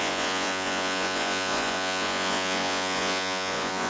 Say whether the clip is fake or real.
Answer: fake